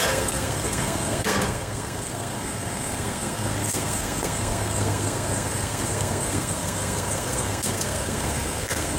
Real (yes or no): no